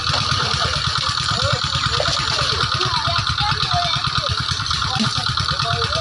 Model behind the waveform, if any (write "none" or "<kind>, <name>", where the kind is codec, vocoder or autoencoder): vocoder, BigVGAN v2